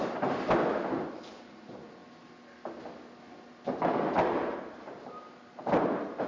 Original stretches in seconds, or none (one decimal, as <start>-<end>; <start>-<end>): 0.0-6.3